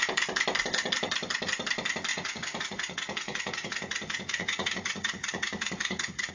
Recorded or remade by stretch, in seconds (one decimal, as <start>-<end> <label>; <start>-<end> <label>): 0.0-2.1 recorded; 2.1-6.3 remade